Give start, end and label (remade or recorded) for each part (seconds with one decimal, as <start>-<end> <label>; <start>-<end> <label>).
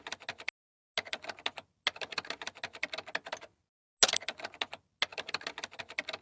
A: 0.0-6.2 recorded